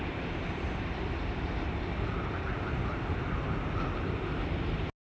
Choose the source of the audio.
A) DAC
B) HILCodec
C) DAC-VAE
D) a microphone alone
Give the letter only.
D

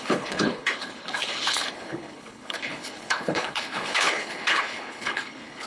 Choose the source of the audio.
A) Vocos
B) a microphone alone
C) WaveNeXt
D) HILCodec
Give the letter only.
D